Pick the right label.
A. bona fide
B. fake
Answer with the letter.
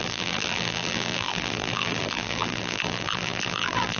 B